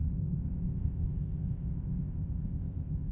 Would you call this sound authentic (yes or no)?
no